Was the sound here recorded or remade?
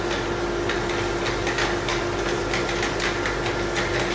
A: recorded